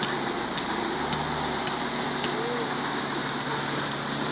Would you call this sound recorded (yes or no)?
yes